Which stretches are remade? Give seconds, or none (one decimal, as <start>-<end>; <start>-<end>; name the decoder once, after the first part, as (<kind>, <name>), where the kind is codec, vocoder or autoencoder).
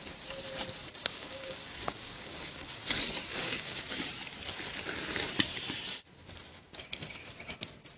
0.8-2.8 (codec, DAC); 3.3-3.8; 6.5-7.2